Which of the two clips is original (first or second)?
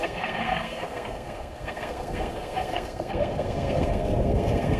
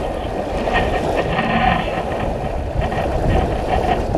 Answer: second